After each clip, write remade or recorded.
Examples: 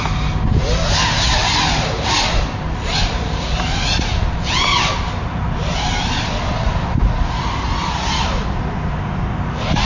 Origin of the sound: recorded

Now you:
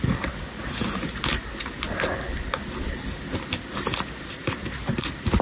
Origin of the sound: recorded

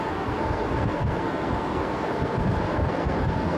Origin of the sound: remade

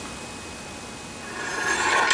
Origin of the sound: recorded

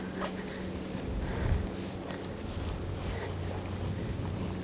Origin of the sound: recorded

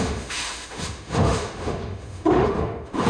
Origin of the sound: remade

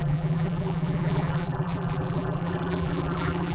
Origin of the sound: remade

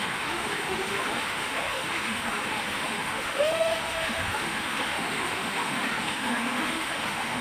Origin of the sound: remade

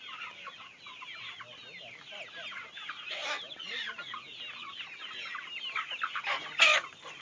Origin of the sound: recorded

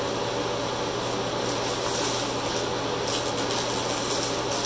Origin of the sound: recorded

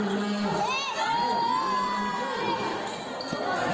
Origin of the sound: recorded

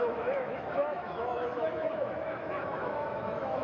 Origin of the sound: remade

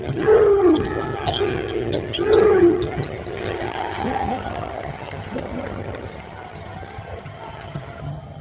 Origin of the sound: remade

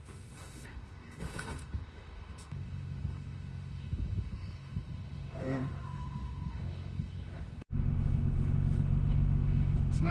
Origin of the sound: remade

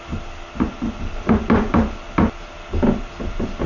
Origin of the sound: recorded